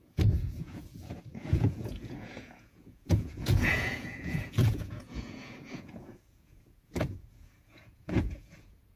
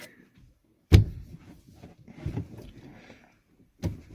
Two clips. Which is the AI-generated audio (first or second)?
first